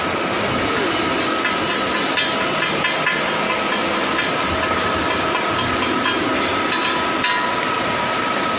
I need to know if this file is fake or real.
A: real